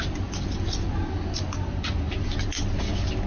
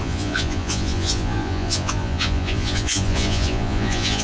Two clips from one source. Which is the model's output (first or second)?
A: second